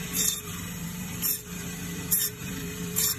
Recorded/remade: remade